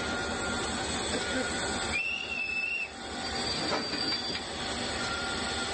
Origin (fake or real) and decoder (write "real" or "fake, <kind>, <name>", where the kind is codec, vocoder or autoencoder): real